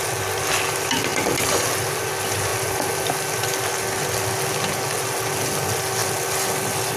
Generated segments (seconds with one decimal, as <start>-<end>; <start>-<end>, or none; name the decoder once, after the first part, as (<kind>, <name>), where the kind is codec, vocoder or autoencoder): none